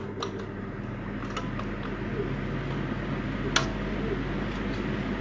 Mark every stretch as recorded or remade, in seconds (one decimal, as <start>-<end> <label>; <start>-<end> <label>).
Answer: 0.0-5.2 recorded